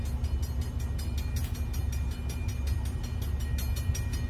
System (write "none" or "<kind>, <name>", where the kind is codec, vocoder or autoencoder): none